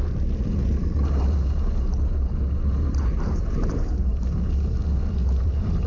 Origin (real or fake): real